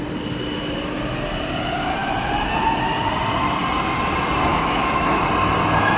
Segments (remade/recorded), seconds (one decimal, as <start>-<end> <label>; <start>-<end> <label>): 0.0-4.5 recorded; 4.5-5.2 remade; 5.2-6.0 recorded